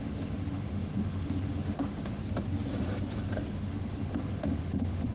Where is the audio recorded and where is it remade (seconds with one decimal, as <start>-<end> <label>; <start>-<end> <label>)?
0.0-2.2 remade; 2.2-3.5 recorded; 3.5-5.1 remade